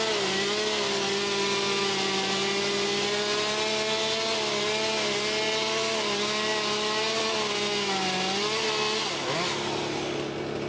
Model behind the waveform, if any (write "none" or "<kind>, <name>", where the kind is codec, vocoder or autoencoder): none